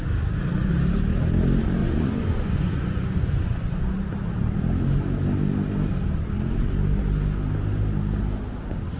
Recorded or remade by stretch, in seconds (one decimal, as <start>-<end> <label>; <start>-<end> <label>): 0.0-1.8 recorded; 1.8-3.8 remade; 3.8-9.0 recorded